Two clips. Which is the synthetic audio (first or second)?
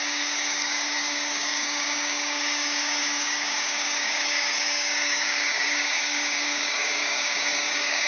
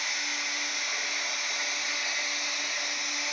first